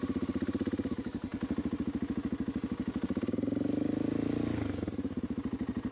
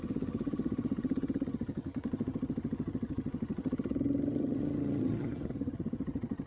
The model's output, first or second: second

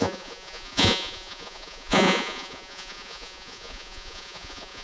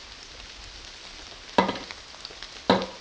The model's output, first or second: first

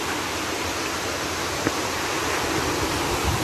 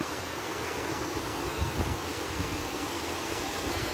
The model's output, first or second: second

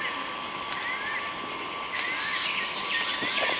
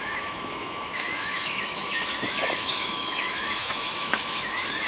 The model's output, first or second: second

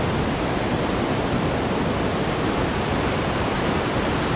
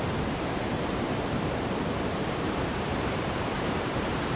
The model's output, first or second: second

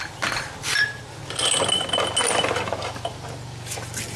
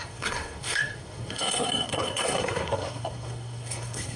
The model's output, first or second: second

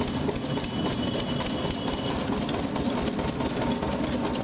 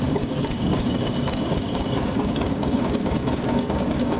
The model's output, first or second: second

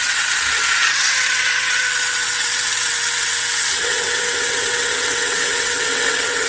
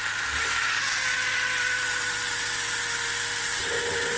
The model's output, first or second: first